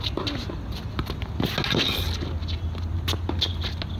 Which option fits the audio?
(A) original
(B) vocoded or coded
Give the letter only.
A